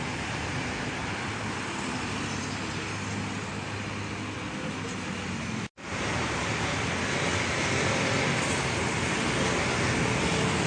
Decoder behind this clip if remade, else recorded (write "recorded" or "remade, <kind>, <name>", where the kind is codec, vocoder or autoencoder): recorded